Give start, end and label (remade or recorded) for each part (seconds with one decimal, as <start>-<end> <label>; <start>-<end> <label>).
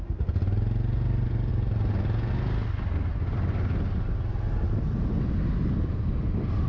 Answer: 0.0-6.7 recorded